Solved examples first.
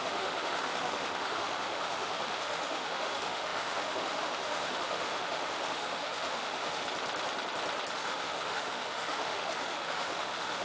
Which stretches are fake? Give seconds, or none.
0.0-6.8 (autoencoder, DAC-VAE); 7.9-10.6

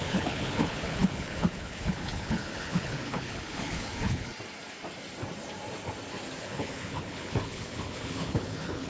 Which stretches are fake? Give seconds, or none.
0.0-4.3 (codec, HILCodec); 6.4-8.9

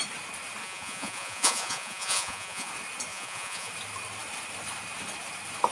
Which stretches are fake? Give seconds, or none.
0.6-2.7 (vocoder, Vocos); 3.1-3.7

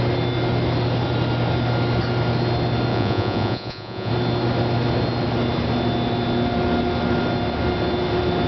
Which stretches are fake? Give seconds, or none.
2.9-4.1 (vocoder, Vocos)

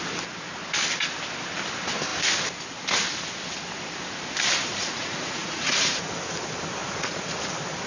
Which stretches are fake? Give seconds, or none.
4.8-6.1 (vocoder, Vocos); 6.8-7.5

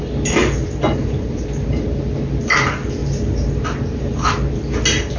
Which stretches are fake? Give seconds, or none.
1.0-2.1 (vocoder, BigVGAN v2); 3.0-4.3

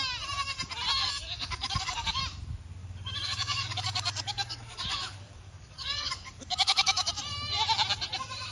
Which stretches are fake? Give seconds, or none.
1.0-2.2 (codec, DAC); 2.8-7.1

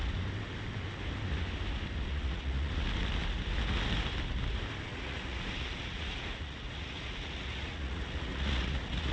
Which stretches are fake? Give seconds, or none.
2.1-2.7 (vocoder, Vocos); 4.9-9.1